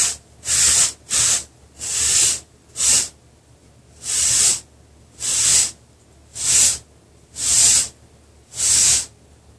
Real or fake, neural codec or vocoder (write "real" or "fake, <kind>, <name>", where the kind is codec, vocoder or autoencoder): real